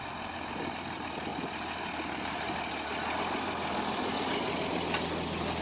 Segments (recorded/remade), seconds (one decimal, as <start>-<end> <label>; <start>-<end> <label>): 0.0-5.6 recorded